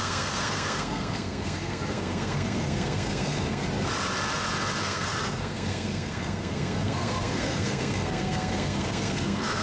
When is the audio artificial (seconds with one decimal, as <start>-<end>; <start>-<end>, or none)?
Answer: 0.0-3.6; 4.8-9.6

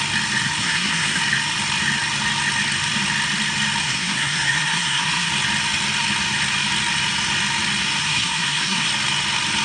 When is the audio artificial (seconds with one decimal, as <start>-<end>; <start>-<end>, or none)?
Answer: 0.6-1.2; 3.8-5.3; 8.0-8.9

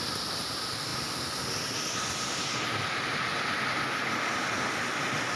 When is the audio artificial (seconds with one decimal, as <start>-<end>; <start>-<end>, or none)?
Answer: none

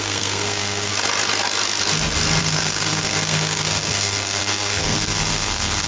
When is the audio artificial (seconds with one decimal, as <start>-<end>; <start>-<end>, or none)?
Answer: 0.0-0.9; 2.4-5.9

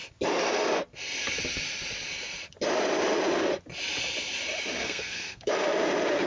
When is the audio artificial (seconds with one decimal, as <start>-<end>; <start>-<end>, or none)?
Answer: 4.8-5.5